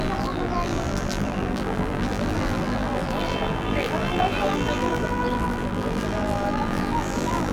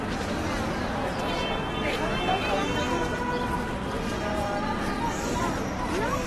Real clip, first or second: second